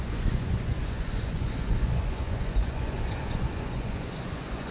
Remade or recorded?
remade